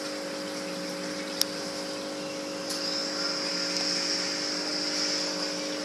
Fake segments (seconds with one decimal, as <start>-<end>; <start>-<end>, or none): none